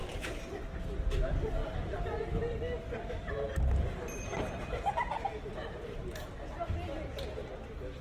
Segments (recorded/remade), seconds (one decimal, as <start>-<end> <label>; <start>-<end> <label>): 0.0-8.0 recorded